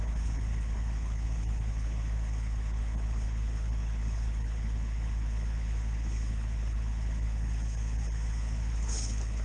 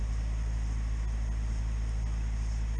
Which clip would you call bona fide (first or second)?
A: second